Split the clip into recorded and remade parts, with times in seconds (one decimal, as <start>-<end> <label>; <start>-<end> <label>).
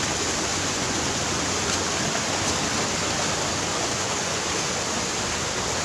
0.0-0.5 recorded; 0.5-1.2 remade; 1.2-3.7 recorded; 3.7-4.4 remade; 4.4-5.8 recorded